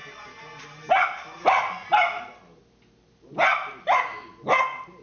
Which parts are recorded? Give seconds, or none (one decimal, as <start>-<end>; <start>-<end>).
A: 0.0-5.0